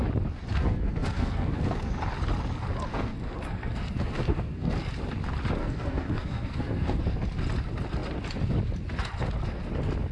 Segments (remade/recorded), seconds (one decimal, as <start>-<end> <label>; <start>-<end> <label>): 0.0-0.5 recorded; 0.5-1.9 remade; 1.9-2.9 recorded; 2.9-4.9 remade; 4.9-5.6 recorded; 5.6-7.0 remade; 7.0-10.1 recorded